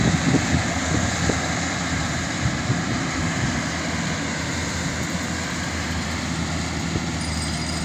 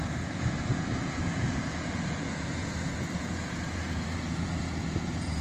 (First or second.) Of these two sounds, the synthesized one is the second